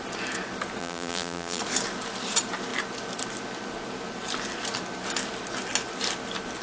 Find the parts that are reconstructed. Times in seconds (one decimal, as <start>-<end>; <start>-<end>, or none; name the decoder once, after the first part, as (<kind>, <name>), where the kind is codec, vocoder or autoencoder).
0.8-1.6 (vocoder, BigVGAN v2)